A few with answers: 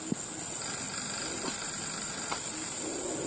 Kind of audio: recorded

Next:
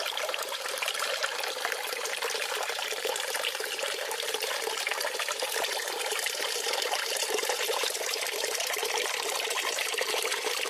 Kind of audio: remade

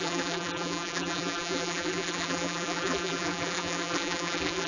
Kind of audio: remade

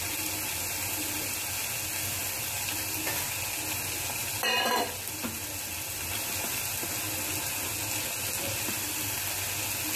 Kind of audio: recorded